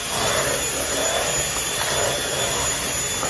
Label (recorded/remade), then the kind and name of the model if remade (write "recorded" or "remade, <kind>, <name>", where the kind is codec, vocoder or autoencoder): recorded